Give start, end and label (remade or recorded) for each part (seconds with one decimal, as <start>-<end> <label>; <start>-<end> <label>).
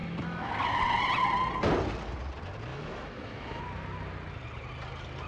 0.0-0.5 remade; 0.5-2.7 recorded; 2.7-3.6 remade; 3.6-5.3 recorded